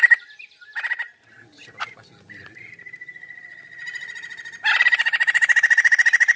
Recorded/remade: recorded